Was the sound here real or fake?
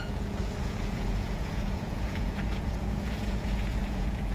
fake